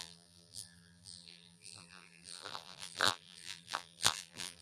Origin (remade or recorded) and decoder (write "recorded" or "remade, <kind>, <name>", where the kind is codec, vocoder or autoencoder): remade, vocoder, BigVGAN v2